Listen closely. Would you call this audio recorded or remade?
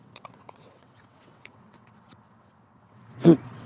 remade